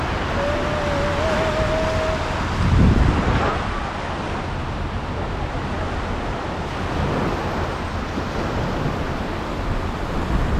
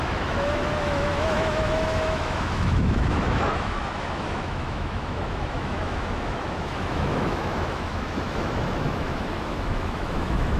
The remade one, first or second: second